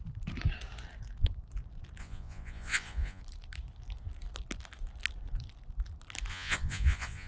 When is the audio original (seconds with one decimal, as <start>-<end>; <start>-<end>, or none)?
0.0-2.0; 3.2-6.3